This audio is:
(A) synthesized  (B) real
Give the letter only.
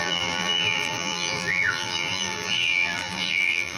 A